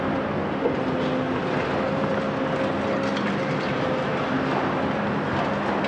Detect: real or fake real